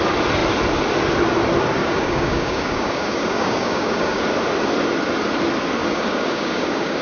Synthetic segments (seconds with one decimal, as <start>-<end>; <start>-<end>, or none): 1.8-4.2; 5.8-7.0